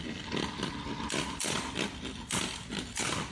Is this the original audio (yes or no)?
yes